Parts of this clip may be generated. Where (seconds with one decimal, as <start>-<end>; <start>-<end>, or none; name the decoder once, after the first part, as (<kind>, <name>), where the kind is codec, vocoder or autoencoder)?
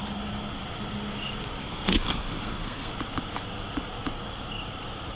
1.6-2.9 (codec, SNAC)